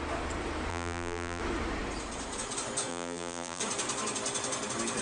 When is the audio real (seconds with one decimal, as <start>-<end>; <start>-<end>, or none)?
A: 0.0-0.7; 1.4-2.9; 3.6-5.0